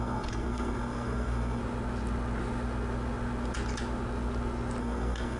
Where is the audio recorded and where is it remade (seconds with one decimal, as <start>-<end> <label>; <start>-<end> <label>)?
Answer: 0.0-1.6 remade; 1.6-4.8 recorded; 4.8-5.4 remade